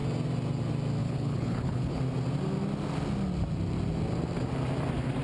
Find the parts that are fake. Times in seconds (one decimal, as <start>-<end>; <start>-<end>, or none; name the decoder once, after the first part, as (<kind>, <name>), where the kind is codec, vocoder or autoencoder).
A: 1.0-2.0 (codec, HILCodec)